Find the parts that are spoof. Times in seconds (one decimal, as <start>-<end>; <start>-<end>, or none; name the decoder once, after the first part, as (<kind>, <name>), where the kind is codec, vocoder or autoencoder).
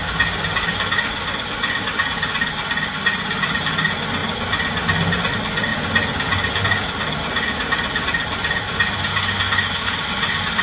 none